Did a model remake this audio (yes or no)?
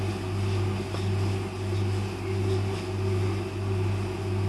no